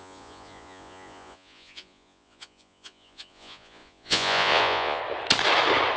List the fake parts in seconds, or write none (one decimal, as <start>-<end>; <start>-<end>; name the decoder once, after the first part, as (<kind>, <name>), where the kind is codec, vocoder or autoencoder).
0.0-5.0 (vocoder, Vocos)